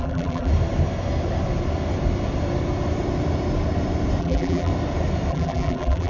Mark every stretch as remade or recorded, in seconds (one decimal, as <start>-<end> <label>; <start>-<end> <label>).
0.0-0.5 remade; 0.5-4.2 recorded; 4.2-4.7 remade; 4.7-5.3 recorded; 5.3-6.1 remade